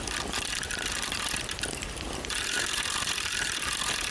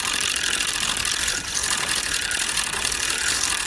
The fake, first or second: first